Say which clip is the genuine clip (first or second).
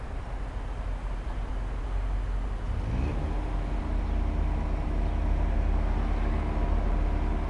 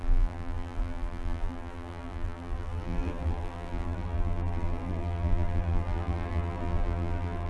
first